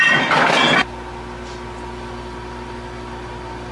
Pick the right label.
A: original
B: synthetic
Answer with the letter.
A